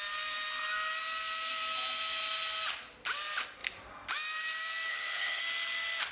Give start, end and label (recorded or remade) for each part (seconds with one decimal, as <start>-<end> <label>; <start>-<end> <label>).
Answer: 0.0-4.9 recorded; 4.9-5.4 remade; 5.4-6.1 recorded